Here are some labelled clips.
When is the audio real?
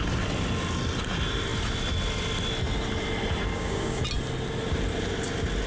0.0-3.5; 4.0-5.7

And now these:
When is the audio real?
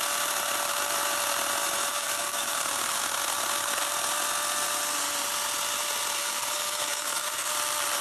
0.0-1.9; 2.5-6.2; 7.5-8.0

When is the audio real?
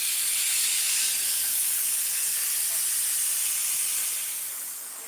2.5-4.3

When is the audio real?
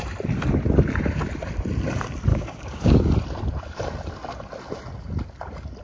0.0-2.3; 3.1-5.8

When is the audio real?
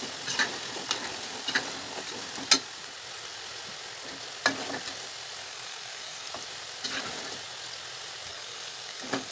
0.0-5.4; 6.3-8.3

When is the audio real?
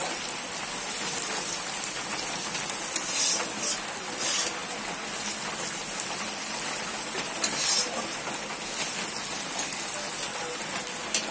0.0-11.3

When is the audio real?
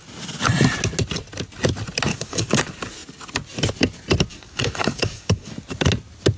0.0-2.1; 2.6-4.3; 5.5-6.4